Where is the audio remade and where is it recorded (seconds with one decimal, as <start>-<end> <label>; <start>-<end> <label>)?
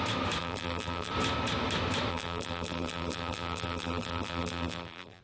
0.0-0.4 recorded; 0.4-1.1 remade; 1.1-2.1 recorded; 2.1-5.2 remade